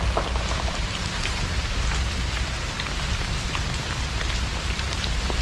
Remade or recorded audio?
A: remade